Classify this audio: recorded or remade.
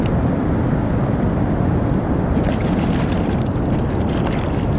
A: recorded